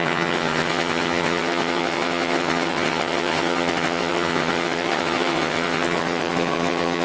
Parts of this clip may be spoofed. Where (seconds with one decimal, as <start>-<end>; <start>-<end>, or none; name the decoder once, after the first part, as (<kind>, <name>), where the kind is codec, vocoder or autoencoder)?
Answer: 0.0-7.0 (vocoder, HiFi-GAN)